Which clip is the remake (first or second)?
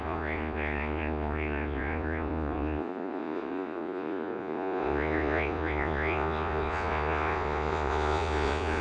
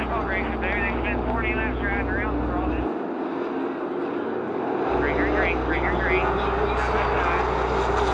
first